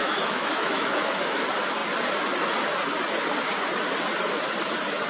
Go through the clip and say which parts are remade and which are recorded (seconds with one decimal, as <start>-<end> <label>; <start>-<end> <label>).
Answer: 0.0-1.4 remade; 1.4-5.1 recorded